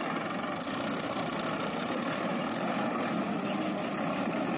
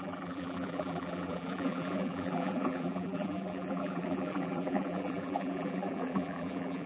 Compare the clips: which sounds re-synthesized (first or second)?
second